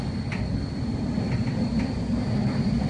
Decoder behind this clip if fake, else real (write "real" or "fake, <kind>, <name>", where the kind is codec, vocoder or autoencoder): real